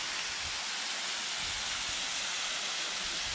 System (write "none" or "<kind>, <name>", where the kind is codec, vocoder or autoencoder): none